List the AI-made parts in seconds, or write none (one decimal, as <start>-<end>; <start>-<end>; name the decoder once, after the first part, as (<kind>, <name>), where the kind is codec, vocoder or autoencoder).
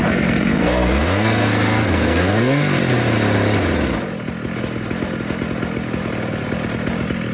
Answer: 0.0-2.8 (codec, SNAC)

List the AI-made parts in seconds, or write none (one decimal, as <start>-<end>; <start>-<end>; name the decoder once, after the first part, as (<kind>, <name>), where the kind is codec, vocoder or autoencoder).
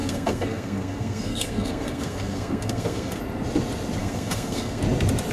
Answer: 0.0-3.2 (codec, SNAC); 4.0-4.8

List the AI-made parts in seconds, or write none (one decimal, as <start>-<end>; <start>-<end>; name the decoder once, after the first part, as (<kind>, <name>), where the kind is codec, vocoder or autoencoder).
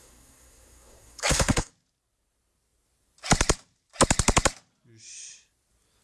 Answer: 0.0-1.7 (codec, SNAC)